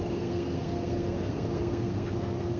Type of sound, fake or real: fake